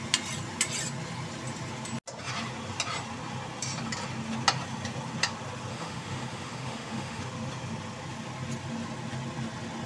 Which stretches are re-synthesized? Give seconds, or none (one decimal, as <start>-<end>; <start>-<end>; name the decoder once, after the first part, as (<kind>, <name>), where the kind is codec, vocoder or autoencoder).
5.7-7.2 (autoencoder, DAC-VAE)